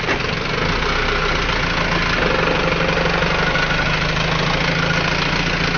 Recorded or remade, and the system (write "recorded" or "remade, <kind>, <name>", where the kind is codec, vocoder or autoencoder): recorded